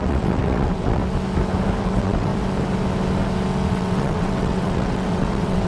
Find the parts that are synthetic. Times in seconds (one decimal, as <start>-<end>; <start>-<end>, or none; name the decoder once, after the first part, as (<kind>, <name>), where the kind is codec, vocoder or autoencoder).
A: 0.0-1.0 (vocoder, WaveNeXt); 1.8-2.3; 3.7-5.7